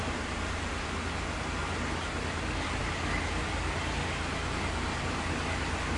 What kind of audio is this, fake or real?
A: real